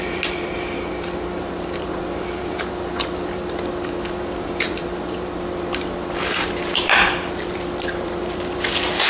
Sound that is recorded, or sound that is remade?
remade